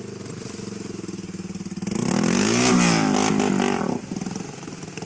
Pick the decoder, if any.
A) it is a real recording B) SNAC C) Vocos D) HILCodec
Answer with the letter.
A